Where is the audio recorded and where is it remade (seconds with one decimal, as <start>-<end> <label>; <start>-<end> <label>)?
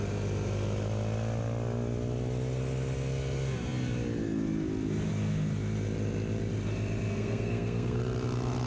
0.0-7.1 recorded; 7.1-8.0 remade; 8.0-8.7 recorded